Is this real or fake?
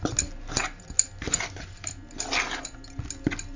real